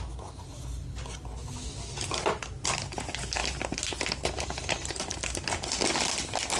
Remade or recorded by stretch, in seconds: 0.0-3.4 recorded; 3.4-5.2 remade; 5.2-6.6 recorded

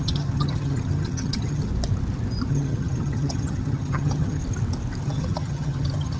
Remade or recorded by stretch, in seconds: 0.0-1.7 remade; 1.7-2.5 recorded; 2.5-4.4 remade; 4.4-5.0 recorded; 5.0-6.2 remade

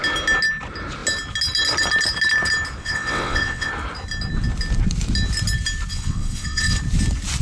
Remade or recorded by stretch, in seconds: 0.0-2.8 recorded; 2.8-3.7 remade; 3.7-5.9 recorded; 5.9-6.8 remade; 6.8-7.4 recorded